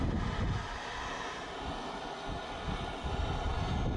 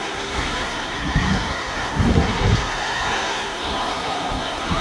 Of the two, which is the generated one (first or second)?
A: second